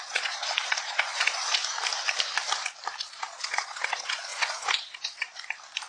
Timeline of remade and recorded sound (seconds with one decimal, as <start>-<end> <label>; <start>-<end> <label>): 0.0-1.6 remade; 1.6-3.0 recorded; 3.0-5.3 remade; 5.3-5.9 recorded